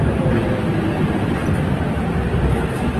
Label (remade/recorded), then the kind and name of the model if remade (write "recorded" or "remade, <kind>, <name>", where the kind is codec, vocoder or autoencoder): recorded